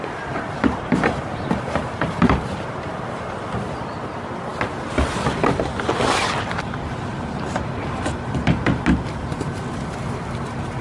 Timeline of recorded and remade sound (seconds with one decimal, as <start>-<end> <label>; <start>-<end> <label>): 0.0-10.8 recorded